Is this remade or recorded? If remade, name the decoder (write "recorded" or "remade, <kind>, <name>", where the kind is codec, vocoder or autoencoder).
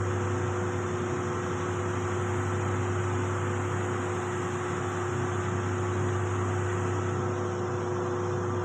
recorded